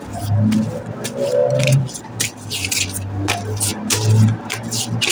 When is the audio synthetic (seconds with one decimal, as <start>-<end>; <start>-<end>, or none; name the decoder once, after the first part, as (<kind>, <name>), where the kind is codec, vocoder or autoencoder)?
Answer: none